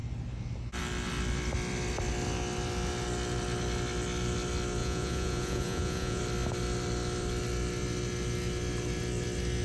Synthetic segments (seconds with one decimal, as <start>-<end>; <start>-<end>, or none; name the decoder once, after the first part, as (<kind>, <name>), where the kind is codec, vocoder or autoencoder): 4.8-6.2 (vocoder, Vocos)